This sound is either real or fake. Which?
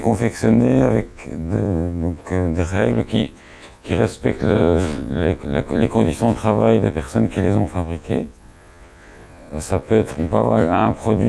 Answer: fake